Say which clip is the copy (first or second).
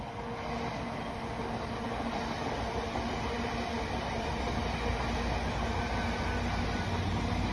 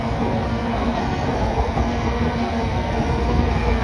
second